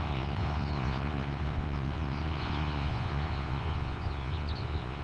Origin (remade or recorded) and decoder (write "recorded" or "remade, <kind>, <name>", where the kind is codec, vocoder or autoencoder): remade, vocoder, Vocos